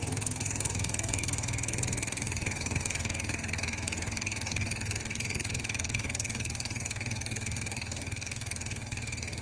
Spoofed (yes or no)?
yes